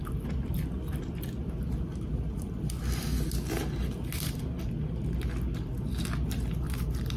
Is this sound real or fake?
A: real